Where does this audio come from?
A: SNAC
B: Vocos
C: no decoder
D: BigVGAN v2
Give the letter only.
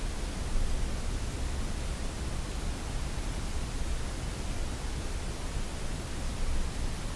C